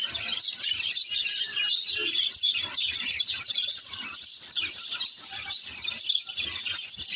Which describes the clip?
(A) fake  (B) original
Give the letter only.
A